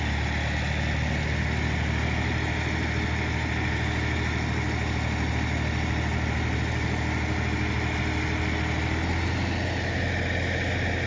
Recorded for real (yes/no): yes